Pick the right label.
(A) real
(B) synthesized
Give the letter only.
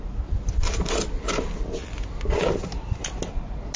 A